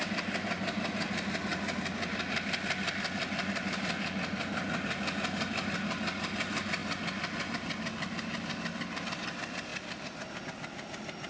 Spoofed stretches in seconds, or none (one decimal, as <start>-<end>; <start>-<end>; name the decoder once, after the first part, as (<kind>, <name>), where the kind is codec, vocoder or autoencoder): none